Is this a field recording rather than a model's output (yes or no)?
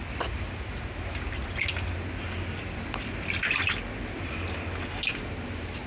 yes